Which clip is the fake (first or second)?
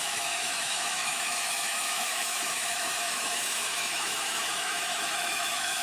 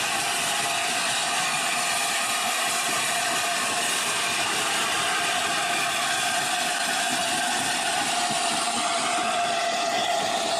first